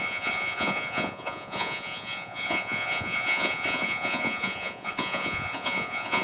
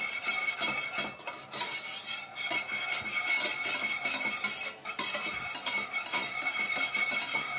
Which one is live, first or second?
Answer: second